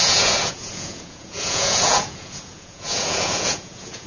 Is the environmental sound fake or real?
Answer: fake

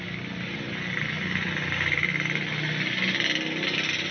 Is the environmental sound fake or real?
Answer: real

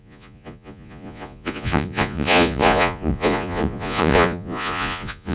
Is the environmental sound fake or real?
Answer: fake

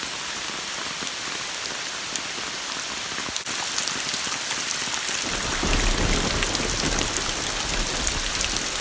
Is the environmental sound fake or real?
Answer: real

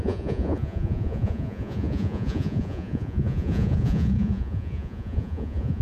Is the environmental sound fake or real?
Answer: fake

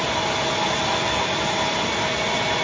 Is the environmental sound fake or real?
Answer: real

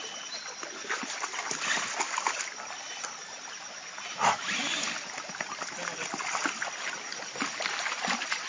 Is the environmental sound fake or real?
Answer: real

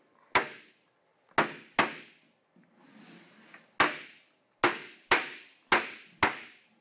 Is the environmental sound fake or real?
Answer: real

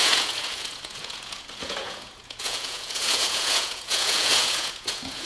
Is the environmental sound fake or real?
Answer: fake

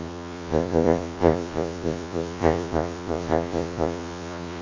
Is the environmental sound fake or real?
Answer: fake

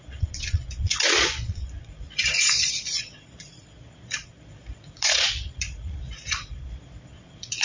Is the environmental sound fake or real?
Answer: fake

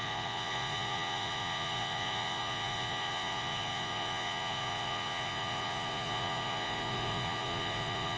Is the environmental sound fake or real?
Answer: fake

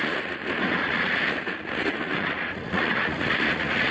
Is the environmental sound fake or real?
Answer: fake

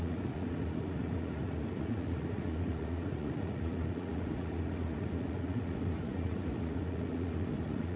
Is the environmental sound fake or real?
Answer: fake